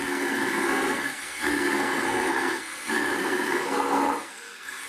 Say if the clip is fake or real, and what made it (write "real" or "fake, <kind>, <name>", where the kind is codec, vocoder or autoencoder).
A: fake, codec, SNAC